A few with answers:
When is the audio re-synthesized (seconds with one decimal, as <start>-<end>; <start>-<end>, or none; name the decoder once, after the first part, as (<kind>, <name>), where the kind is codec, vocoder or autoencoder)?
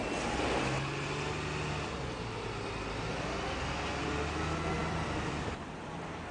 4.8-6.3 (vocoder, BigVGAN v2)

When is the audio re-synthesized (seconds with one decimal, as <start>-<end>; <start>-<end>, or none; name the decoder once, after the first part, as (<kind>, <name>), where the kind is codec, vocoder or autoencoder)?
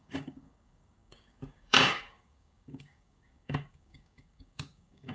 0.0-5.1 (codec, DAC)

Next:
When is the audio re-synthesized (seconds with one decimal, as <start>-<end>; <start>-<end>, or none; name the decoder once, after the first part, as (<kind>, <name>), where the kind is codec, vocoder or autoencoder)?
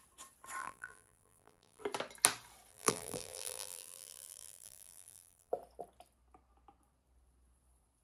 0.6-1.8 (vocoder, BigVGAN v2); 2.7-5.5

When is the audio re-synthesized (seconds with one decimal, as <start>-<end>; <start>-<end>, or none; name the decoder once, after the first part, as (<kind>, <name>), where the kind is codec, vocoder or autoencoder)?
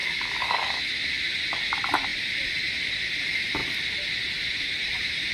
0.0-0.8 (codec, DAC)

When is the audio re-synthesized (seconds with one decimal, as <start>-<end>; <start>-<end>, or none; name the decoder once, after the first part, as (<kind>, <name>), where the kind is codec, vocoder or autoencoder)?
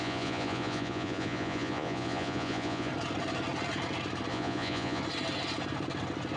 0.0-2.9 (vocoder, Vocos); 4.3-5.0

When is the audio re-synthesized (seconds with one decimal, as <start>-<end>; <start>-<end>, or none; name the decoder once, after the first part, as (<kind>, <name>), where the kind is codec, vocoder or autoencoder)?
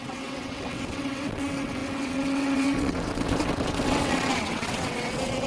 0.0-5.5 (vocoder, WaveNeXt)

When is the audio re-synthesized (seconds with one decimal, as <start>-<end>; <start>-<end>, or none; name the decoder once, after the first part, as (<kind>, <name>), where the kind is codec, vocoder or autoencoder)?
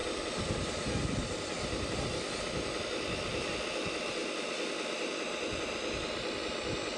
0.0-7.0 (vocoder, BigVGAN v2)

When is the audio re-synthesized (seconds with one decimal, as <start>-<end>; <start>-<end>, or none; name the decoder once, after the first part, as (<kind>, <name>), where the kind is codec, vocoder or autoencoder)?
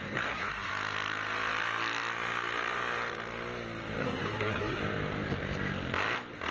0.0-0.7 (codec, SNAC); 4.0-4.8